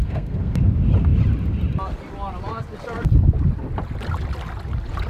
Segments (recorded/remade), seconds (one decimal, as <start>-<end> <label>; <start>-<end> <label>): 0.0-0.6 remade; 0.6-5.1 recorded